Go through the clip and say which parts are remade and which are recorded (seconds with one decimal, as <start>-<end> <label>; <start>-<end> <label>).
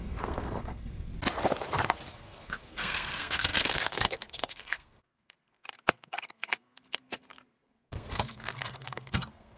0.0-1.1 remade; 1.1-2.1 recorded; 2.1-9.6 remade